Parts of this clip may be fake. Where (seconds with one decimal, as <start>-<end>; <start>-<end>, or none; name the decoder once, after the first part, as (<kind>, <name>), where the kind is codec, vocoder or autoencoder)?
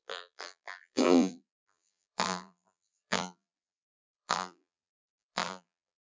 0.0-6.1 (vocoder, BigVGAN v2)